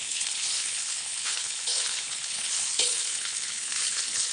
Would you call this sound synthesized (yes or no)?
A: yes